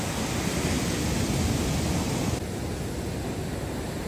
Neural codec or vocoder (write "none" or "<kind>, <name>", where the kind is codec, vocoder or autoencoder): none